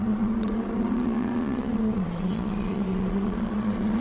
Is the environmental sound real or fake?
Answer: fake